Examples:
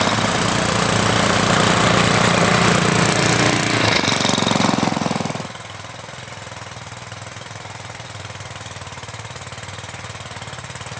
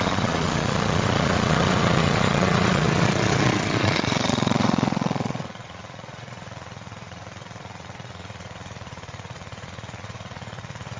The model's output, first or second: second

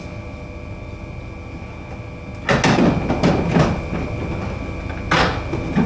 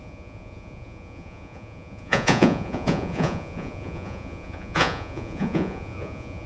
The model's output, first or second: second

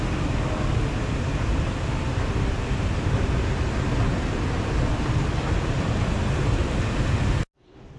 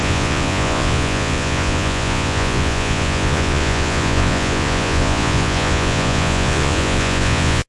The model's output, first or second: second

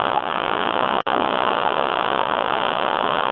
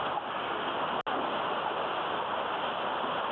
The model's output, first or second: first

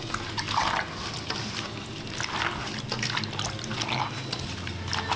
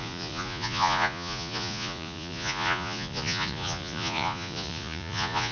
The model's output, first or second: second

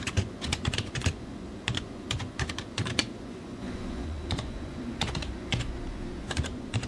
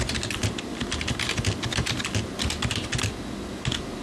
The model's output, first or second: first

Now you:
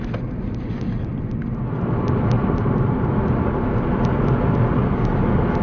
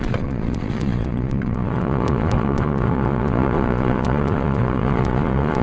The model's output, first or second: second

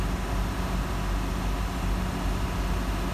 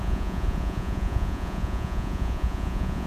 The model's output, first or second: second